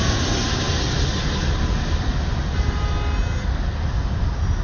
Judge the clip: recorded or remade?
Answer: recorded